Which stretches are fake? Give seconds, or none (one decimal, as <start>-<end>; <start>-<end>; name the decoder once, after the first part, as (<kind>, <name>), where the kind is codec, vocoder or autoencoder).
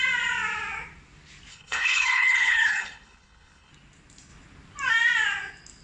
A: 1.5-3.7 (codec, HILCodec)